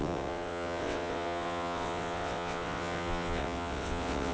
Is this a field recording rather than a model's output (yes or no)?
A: no